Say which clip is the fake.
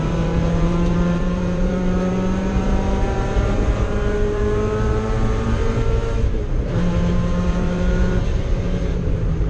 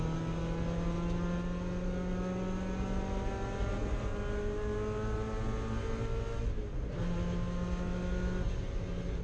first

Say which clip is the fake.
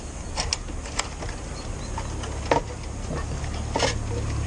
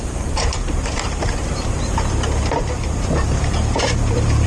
second